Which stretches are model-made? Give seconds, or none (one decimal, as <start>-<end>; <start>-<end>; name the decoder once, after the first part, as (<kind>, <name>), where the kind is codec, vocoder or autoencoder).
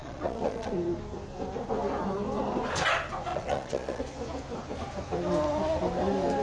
0.0-0.7 (vocoder, Vocos); 3.3-4.0